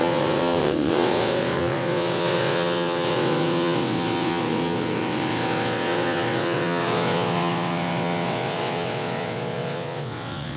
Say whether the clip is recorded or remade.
remade